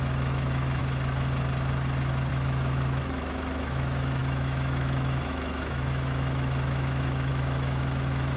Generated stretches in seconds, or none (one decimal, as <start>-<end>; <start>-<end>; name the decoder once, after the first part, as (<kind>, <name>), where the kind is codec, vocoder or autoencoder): 0.0-0.8 (autoencoder, DAC-VAE); 2.3-8.4